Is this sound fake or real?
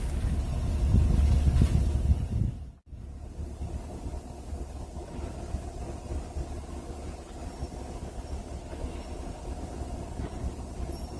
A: real